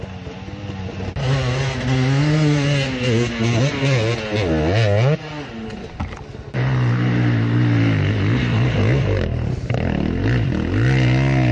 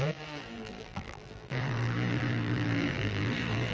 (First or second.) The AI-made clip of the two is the second